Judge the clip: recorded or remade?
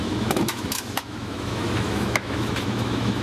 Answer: remade